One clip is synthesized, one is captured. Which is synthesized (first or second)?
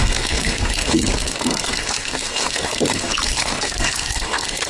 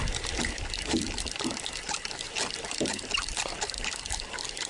first